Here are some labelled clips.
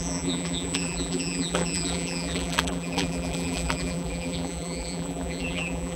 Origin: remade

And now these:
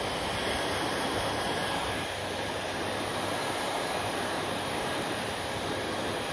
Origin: remade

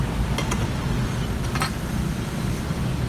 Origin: recorded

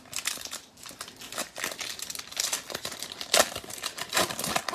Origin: recorded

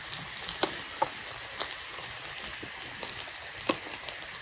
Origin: recorded